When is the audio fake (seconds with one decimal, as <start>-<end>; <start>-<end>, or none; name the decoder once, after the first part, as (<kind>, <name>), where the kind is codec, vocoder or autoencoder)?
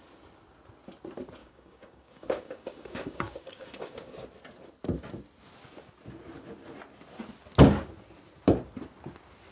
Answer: 1.4-4.1 (codec, DAC)